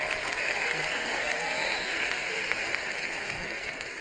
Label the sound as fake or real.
fake